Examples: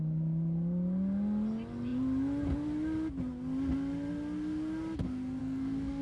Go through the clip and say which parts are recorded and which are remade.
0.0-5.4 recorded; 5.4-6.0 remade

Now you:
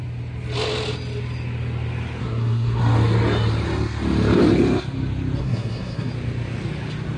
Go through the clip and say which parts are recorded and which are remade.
0.0-2.2 recorded; 2.2-2.8 remade; 2.8-5.4 recorded; 5.4-6.1 remade; 6.1-7.2 recorded

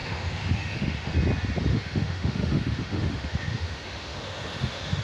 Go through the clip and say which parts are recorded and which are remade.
0.0-1.1 remade; 1.1-1.7 recorded; 1.7-5.0 remade

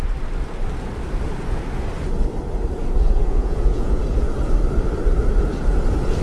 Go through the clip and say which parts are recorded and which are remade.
0.0-3.2 recorded; 3.2-4.0 remade; 4.0-6.2 recorded

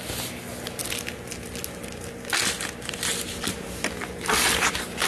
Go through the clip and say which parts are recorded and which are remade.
0.0-5.1 recorded

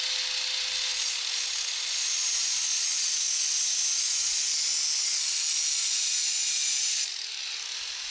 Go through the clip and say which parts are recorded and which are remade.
0.0-8.1 recorded